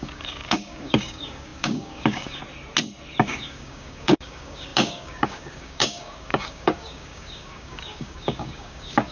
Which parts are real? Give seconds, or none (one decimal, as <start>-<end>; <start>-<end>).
2.4-3.2